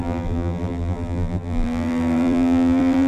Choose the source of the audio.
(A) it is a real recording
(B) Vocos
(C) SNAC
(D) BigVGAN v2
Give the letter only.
D